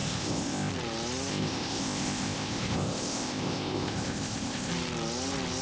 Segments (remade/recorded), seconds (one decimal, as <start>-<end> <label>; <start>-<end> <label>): 0.0-0.7 remade; 0.7-1.3 recorded; 1.3-4.7 remade; 4.7-5.6 recorded